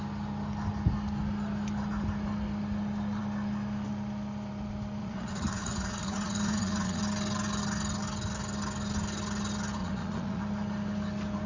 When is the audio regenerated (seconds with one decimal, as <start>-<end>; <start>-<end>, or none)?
5.0-7.0; 9.8-10.4